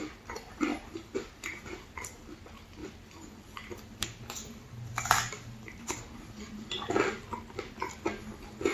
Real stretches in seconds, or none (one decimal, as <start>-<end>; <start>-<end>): 0.0-0.7; 1.2-2.8; 6.9-8.7

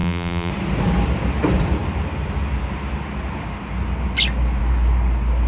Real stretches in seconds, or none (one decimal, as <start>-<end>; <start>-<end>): 0.5-5.5

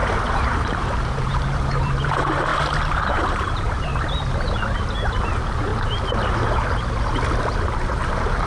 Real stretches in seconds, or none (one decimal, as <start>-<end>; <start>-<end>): 2.5-3.1; 3.9-4.8; 5.7-7.9

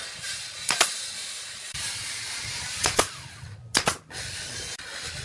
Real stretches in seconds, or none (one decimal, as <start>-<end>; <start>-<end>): 3.1-5.2

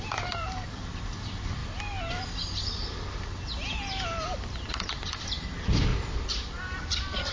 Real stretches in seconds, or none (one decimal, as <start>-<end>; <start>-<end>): 1.6-4.7; 5.9-6.7

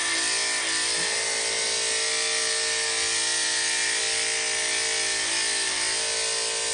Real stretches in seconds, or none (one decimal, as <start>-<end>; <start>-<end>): 0.0-6.7

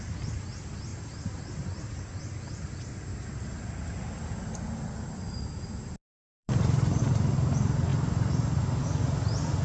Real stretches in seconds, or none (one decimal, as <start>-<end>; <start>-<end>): 0.0-0.9; 2.2-6.3; 7.0-9.6